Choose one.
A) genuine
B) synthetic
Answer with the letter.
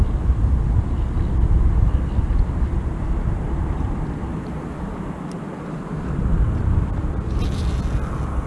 A